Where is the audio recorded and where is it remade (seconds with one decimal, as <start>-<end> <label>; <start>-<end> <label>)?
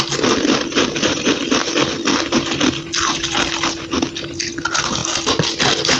0.0-6.0 recorded